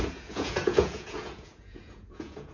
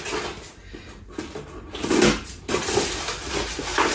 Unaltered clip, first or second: second